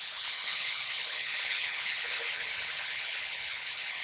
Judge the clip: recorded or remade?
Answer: remade